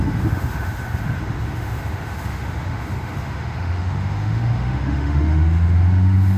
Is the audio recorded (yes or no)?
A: no